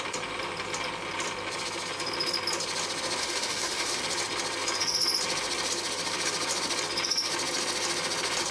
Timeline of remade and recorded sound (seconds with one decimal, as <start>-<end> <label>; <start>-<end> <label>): 0.0-3.2 recorded; 3.2-4.0 remade; 4.0-8.5 recorded